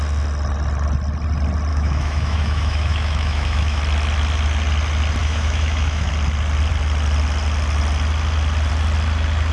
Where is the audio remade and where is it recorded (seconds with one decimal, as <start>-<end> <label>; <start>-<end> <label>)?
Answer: 0.0-1.7 recorded; 1.7-3.8 remade; 3.8-5.2 recorded; 5.2-6.1 remade; 6.1-9.5 recorded